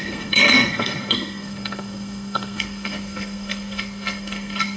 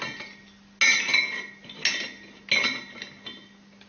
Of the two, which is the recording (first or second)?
second